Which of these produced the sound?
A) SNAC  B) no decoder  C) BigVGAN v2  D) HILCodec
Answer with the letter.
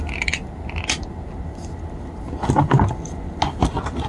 B